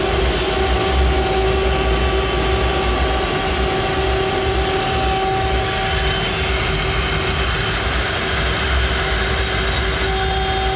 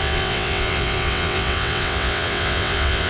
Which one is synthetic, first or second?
second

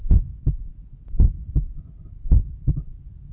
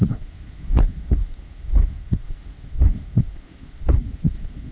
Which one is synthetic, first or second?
second